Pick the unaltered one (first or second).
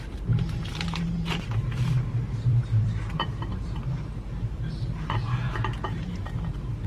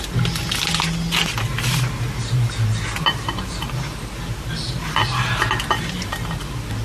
second